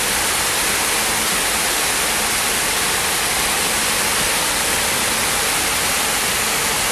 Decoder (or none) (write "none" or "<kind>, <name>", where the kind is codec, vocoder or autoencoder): none